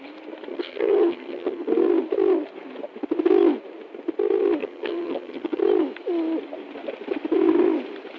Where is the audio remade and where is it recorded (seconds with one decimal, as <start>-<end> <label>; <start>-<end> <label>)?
0.0-0.5 recorded; 0.5-1.7 remade; 1.7-4.6 recorded; 4.6-5.6 remade; 5.6-8.2 recorded